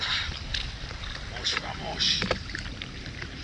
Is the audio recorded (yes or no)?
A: yes